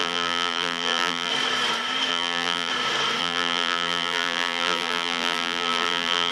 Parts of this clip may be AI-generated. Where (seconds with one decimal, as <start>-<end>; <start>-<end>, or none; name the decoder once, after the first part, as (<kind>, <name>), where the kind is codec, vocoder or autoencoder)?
0.0-1.3 (vocoder, BigVGAN v2); 2.1-2.7; 3.2-6.3